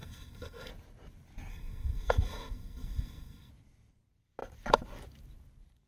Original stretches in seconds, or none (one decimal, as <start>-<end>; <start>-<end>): 0.7-1.5; 3.5-5.9